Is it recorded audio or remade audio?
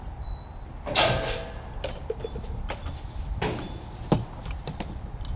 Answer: recorded